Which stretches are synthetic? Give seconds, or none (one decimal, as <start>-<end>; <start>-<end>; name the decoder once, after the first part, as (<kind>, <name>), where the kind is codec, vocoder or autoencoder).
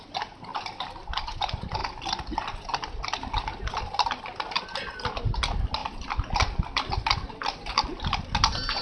none